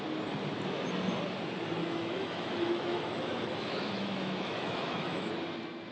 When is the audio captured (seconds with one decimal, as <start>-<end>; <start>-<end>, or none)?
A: 0.0-1.8; 5.3-5.9